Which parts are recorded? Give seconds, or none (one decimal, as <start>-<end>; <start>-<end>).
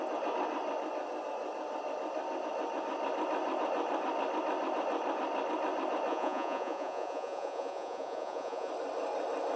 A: 0.0-6.1; 8.7-9.6